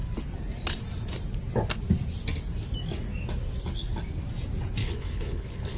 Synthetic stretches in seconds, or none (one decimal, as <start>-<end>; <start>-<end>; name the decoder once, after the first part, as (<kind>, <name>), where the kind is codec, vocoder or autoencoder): 4.8-5.8 (codec, HILCodec)